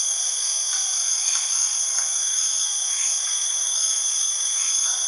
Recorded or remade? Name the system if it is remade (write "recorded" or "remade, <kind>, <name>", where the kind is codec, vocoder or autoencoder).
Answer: remade, codec, SNAC